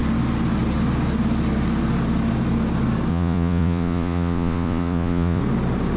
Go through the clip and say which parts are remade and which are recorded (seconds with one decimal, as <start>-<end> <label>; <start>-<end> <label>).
0.0-3.1 recorded; 3.1-5.4 remade; 5.4-6.0 recorded